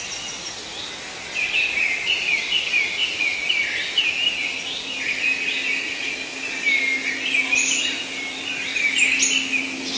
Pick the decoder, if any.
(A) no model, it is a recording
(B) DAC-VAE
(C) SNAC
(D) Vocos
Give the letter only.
A